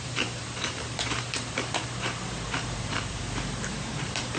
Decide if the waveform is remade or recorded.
remade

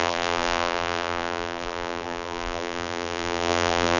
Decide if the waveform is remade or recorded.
remade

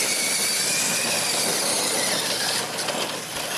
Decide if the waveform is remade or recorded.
recorded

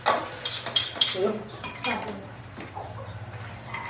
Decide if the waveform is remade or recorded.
remade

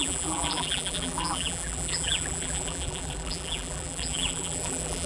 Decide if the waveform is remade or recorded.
remade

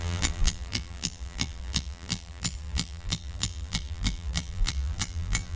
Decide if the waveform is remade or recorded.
remade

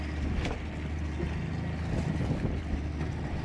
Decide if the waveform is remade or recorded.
recorded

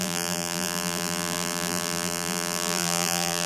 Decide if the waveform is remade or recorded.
remade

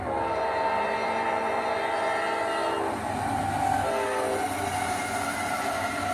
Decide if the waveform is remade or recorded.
recorded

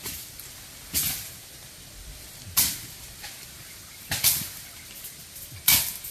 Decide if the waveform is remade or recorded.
recorded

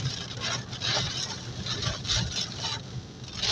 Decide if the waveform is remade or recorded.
recorded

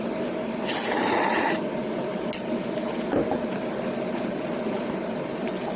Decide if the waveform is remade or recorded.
recorded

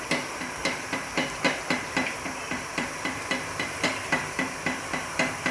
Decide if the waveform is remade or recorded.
remade